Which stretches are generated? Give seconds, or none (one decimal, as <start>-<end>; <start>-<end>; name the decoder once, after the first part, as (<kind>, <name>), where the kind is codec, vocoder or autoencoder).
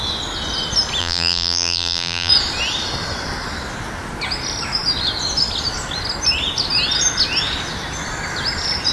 1.0-2.3 (vocoder, BigVGAN v2)